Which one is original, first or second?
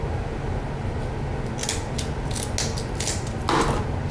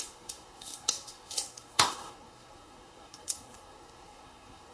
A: first